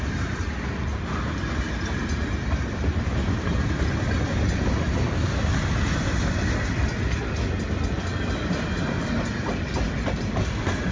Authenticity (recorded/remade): recorded